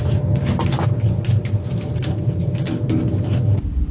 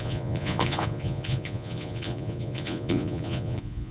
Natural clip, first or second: first